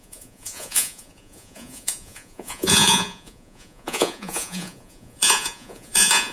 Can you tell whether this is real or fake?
fake